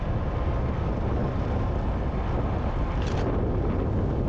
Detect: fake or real real